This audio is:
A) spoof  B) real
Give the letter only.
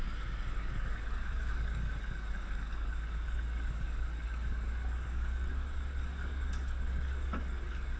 A